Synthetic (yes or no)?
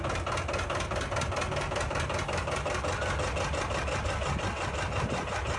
no